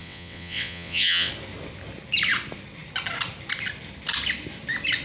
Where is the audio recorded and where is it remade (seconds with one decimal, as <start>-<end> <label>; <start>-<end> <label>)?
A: 0.0-1.3 remade; 1.3-5.0 recorded